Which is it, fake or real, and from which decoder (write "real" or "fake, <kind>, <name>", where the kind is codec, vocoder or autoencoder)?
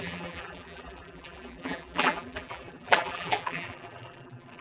fake, vocoder, BigVGAN v2